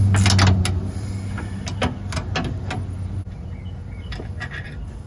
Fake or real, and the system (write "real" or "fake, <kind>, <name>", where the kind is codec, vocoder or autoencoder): real